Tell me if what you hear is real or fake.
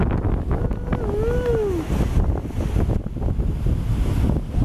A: real